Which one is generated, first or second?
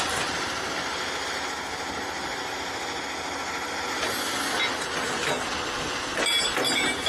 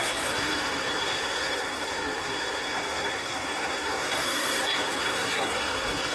second